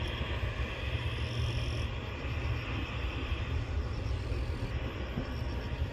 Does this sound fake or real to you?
real